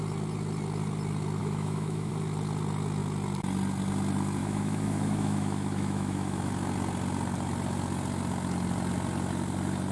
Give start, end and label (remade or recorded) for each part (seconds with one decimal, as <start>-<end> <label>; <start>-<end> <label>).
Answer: 0.0-1.4 recorded; 1.4-2.1 remade; 2.1-4.4 recorded; 4.4-6.5 remade; 6.5-9.9 recorded